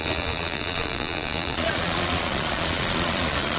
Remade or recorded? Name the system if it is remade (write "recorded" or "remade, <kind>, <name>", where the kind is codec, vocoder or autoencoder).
remade, vocoder, Vocos